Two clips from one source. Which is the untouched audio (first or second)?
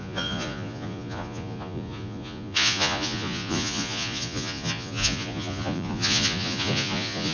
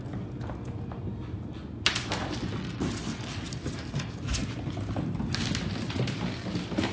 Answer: second